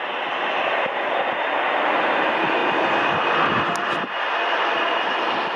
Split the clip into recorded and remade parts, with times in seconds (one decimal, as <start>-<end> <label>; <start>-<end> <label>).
0.0-5.6 recorded

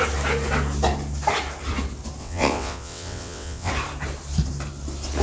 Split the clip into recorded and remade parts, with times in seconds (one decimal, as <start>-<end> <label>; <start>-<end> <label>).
0.0-2.2 recorded; 2.2-3.7 remade; 3.7-5.2 recorded

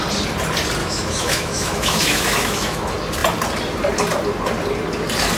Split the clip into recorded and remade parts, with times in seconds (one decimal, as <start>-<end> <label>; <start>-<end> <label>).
0.0-0.8 recorded; 0.8-2.8 remade; 2.8-5.4 recorded